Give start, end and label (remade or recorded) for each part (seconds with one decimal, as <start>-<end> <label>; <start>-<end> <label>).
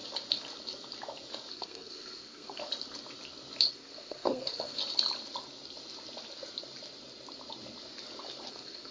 0.0-1.5 recorded; 1.5-2.6 remade; 2.6-3.7 recorded; 3.7-4.8 remade; 4.8-8.5 recorded; 8.5-8.9 remade